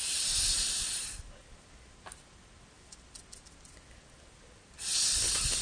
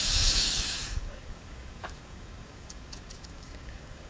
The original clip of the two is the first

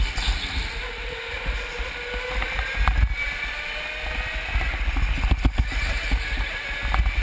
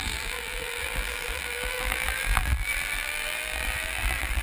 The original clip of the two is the first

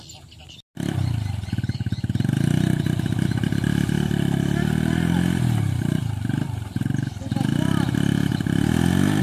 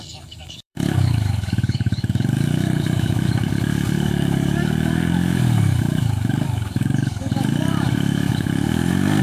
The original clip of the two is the first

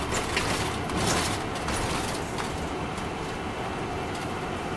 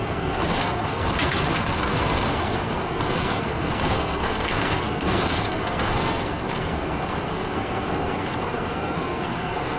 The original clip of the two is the first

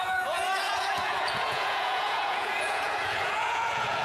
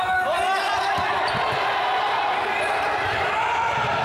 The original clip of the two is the second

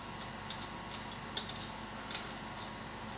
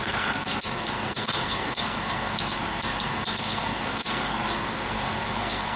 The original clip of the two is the first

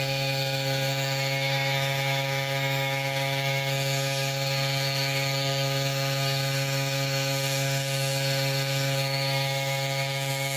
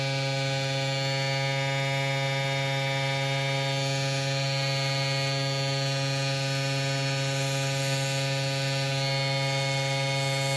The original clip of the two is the second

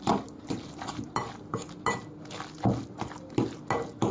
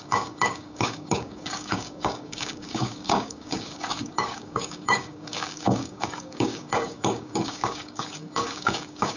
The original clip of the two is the first